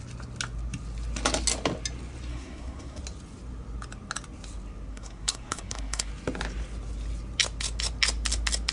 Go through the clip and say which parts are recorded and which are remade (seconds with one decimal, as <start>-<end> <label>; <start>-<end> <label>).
0.0-2.3 recorded; 2.3-3.0 remade; 3.0-4.9 recorded; 4.9-6.1 remade; 6.1-8.7 recorded